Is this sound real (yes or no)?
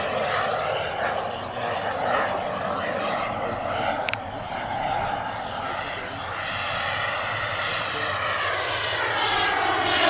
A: yes